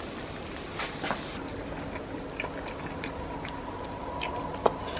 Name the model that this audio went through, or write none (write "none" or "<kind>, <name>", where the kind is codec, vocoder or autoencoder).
none